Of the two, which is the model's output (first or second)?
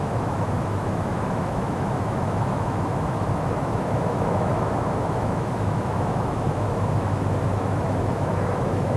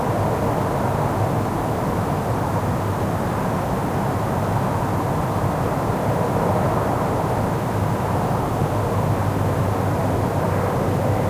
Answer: first